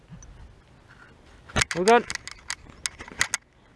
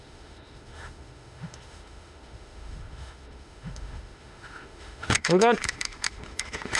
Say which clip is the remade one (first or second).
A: second